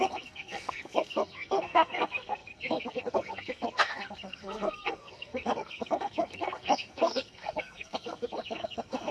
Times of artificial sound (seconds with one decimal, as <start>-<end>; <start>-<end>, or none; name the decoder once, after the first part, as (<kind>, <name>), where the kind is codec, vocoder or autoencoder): 0.0-9.1 (codec, SNAC)